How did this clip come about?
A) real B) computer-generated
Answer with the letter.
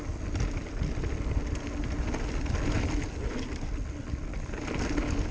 A